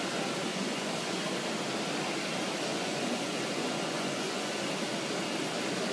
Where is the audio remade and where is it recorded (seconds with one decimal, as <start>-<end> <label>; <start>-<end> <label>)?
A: 0.0-0.5 recorded; 0.5-1.2 remade; 1.2-2.7 recorded; 2.7-4.6 remade; 4.6-5.9 recorded